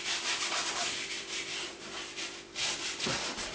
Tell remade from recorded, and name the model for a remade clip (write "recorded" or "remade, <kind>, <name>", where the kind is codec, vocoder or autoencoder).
recorded